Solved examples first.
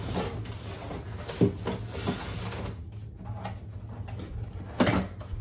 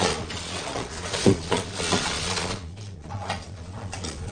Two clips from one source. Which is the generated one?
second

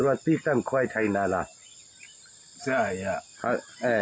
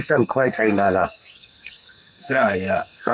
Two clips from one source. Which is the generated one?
second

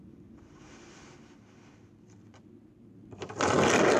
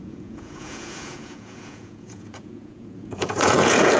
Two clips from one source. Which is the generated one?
second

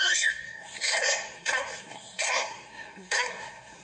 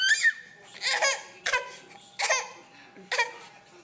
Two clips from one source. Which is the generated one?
first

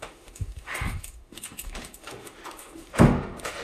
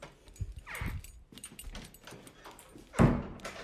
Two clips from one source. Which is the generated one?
first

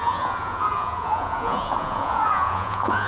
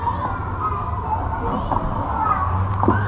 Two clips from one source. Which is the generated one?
first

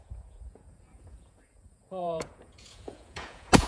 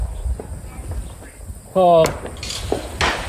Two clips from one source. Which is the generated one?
first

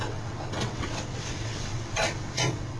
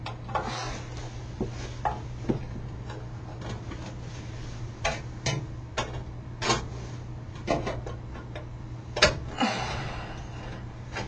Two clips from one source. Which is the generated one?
first